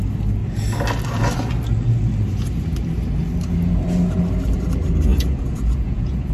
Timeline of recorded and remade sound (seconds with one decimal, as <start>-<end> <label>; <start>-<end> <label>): 0.0-5.1 recorded; 5.1-6.3 remade